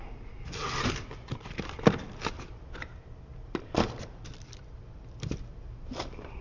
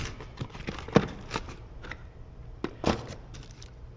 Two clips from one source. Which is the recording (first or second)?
second